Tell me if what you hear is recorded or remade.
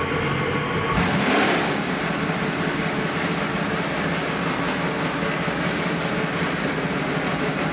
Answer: recorded